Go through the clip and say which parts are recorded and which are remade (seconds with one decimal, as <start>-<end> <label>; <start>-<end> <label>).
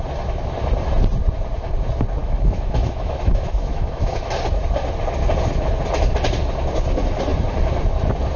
0.0-2.2 recorded; 2.2-4.3 remade; 4.3-8.4 recorded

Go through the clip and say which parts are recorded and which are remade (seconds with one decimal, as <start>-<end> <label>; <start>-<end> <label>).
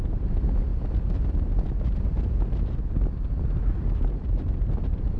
0.0-5.2 recorded